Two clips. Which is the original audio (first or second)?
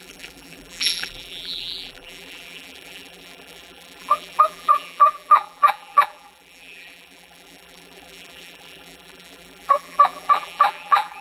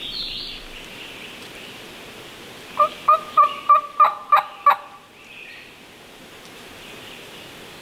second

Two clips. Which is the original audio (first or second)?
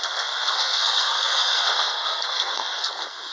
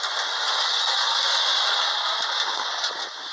second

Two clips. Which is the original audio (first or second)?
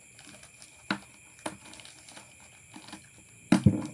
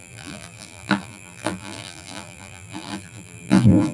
first